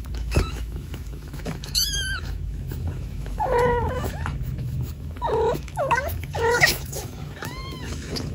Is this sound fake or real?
fake